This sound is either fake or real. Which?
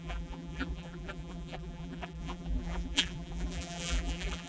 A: fake